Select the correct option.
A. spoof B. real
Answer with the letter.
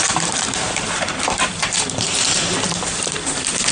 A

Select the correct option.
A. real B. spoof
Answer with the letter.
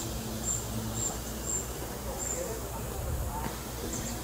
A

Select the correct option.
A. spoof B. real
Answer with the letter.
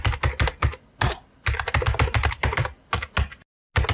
B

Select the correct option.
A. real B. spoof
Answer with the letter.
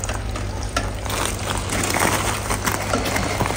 A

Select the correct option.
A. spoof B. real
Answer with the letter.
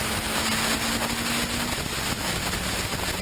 B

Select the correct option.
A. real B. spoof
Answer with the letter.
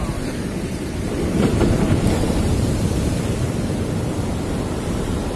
B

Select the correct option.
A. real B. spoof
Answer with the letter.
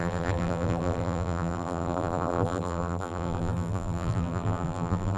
B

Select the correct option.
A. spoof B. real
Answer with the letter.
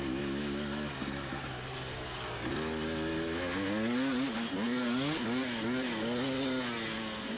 B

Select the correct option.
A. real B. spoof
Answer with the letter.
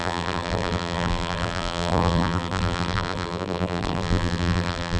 B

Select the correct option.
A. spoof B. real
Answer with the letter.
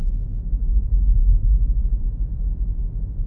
A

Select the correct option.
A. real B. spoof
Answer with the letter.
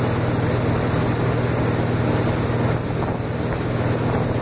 A